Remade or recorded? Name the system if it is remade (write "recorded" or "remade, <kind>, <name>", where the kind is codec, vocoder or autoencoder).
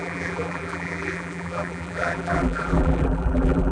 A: remade, vocoder, BigVGAN v2